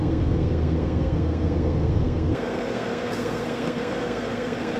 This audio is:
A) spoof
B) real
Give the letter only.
A